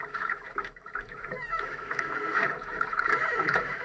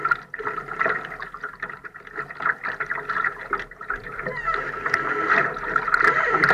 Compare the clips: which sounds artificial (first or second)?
first